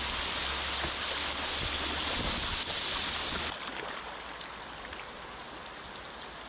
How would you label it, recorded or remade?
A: recorded